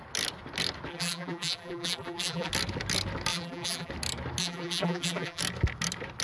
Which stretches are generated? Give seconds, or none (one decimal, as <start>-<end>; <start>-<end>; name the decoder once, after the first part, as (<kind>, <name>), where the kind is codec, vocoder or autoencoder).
0.9-2.5 (vocoder, BigVGAN v2); 3.3-3.9; 4.4-5.4